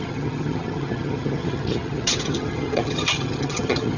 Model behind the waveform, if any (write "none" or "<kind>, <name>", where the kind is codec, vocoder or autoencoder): vocoder, HiFi-GAN